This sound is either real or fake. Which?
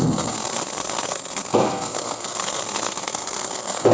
fake